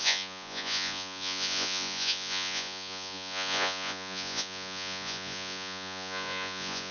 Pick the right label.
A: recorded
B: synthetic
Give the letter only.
B